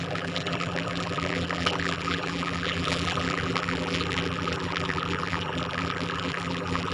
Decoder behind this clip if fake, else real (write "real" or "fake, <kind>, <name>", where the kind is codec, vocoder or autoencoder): fake, vocoder, BigVGAN v2